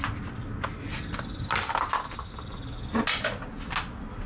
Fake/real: real